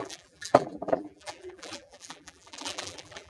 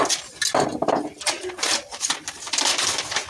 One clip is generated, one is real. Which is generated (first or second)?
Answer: first